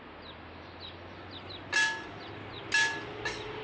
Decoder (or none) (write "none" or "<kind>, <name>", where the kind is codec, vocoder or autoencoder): none